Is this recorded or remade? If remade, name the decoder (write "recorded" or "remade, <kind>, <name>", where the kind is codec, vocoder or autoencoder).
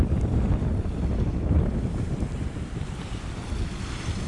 recorded